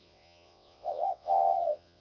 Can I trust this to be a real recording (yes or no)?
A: no